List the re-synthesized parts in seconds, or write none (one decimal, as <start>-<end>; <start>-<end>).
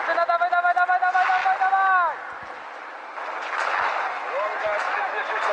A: none